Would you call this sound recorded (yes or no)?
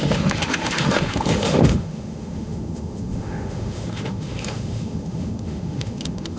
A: no